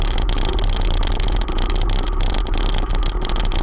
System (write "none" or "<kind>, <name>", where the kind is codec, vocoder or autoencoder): none